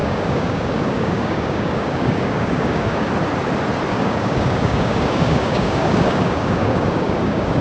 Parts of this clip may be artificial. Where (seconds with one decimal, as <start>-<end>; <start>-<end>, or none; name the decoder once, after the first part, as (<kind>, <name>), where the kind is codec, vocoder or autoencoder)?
0.0-3.1 (codec, DAC); 3.9-7.6